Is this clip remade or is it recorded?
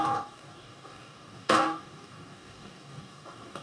remade